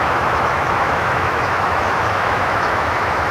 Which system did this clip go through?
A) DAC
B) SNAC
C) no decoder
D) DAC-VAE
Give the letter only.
D